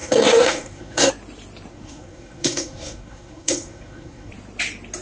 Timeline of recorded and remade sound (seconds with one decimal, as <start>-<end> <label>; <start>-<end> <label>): 0.0-1.1 remade; 1.1-1.7 recorded; 1.7-4.3 remade; 4.3-5.0 recorded